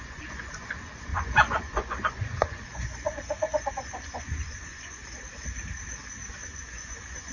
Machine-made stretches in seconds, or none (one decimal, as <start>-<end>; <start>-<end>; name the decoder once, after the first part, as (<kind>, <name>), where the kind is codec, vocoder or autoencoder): 0.0-5.0 (vocoder, Vocos); 6.3-7.3